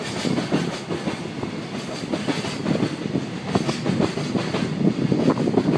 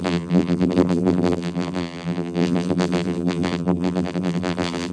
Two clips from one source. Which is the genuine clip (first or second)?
first